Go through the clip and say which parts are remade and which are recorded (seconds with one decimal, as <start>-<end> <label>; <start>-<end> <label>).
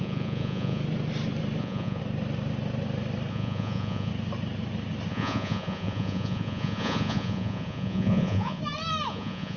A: 0.0-0.8 remade; 0.8-1.6 recorded; 1.6-2.0 remade; 2.0-3.3 recorded; 3.3-4.1 remade; 4.1-5.1 recorded; 5.1-8.6 remade; 8.6-9.1 recorded; 9.1-9.6 remade